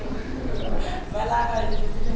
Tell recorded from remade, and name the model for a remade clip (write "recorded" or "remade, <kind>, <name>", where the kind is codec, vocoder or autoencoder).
recorded